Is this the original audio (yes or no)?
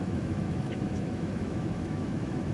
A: no